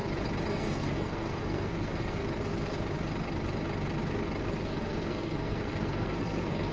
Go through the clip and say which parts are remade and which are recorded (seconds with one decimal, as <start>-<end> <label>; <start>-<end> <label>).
0.0-0.5 recorded; 0.5-2.2 remade; 2.2-4.4 recorded; 4.4-6.7 remade